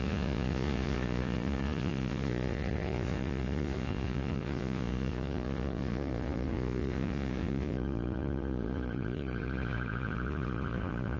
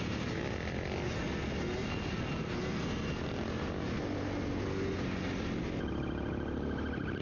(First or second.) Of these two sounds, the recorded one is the second